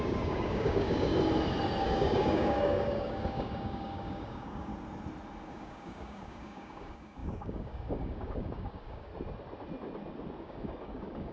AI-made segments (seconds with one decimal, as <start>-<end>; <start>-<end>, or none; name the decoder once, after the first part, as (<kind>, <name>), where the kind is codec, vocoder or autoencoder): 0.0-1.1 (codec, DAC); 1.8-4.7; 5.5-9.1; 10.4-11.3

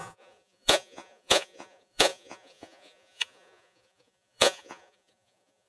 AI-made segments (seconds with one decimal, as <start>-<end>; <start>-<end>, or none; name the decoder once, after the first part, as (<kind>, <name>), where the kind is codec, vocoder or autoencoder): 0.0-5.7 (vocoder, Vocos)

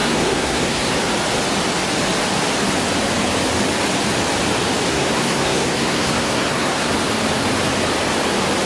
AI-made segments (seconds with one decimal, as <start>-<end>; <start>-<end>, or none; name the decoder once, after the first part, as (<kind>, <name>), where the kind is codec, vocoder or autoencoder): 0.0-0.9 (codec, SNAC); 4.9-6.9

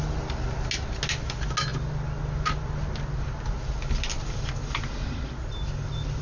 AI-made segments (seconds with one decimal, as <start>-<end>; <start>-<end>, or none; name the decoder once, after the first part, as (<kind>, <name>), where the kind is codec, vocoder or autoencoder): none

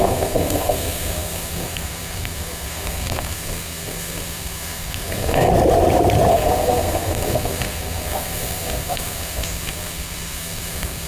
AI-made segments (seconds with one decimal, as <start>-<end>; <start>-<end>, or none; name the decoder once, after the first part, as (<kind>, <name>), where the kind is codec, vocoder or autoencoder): 0.0-5.5 (codec, SNAC); 6.3-11.1

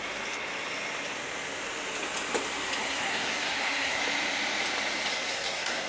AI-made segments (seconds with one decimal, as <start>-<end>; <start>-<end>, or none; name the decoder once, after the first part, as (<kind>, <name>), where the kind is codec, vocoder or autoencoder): 2.8-4.0 (codec, SNAC); 5.1-5.9

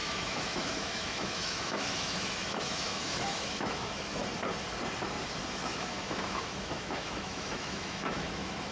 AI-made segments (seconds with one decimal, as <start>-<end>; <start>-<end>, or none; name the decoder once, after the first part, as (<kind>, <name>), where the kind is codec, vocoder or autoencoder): 0.0-4.2 (autoencoder, DAC-VAE); 5.5-8.7

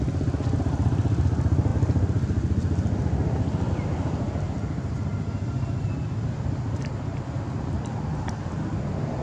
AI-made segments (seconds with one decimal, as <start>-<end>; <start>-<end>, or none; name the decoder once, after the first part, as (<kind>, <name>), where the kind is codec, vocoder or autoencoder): none